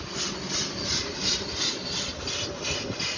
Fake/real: real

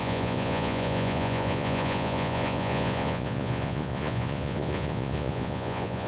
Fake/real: fake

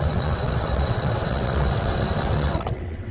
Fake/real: fake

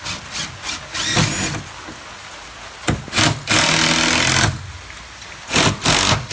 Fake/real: real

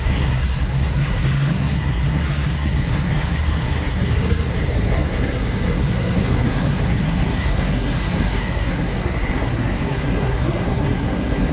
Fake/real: fake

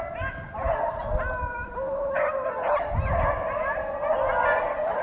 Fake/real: real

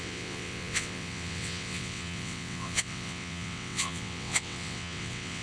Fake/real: fake